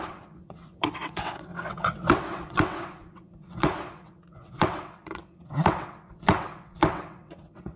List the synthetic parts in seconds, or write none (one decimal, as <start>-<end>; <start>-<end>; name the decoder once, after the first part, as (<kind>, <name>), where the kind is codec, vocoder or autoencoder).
0.0-7.8 (vocoder, WaveNeXt)